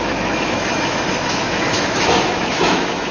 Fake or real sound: fake